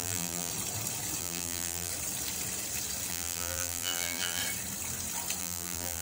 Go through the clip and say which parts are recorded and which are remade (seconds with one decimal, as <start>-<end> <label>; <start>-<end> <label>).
0.0-0.5 remade; 0.5-1.2 recorded; 1.2-1.9 remade; 1.9-3.1 recorded; 3.1-4.4 remade; 4.4-5.4 recorded; 5.4-6.0 remade